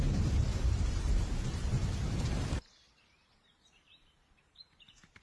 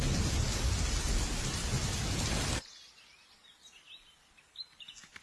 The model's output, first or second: first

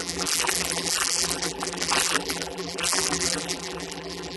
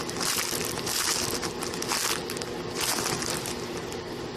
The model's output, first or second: first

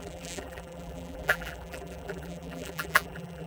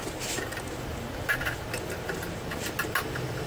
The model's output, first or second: first